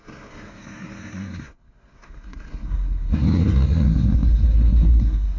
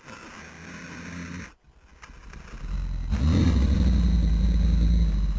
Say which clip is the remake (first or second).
first